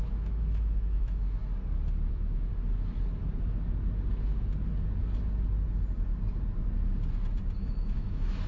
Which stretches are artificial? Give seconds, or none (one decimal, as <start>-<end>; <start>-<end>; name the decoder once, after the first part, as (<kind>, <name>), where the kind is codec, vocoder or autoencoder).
0.0-1.4 (autoencoder, DAC-VAE); 2.1-2.5; 7.6-8.5